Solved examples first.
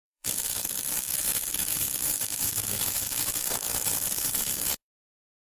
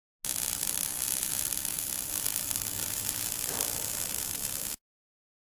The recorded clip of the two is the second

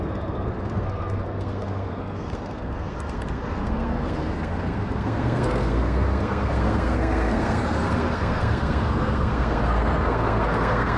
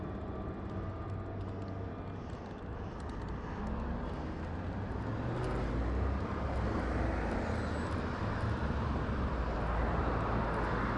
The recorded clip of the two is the second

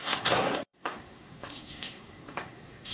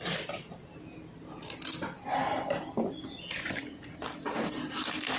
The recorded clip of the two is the second